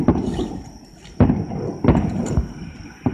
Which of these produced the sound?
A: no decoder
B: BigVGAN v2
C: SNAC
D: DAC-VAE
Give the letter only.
A